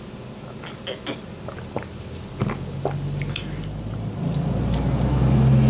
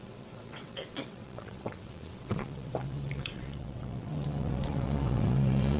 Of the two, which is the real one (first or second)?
first